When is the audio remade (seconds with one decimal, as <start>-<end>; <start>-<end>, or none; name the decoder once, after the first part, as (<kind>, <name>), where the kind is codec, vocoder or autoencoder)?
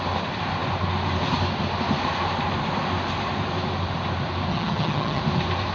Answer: 4.5-5.2 (vocoder, HiFi-GAN)